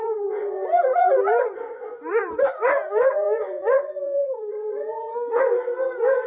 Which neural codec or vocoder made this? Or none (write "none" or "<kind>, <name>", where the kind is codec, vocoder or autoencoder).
vocoder, Vocos